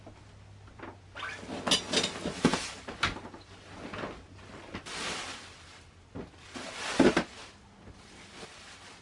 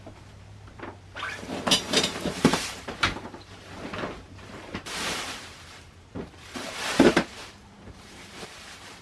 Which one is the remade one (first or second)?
second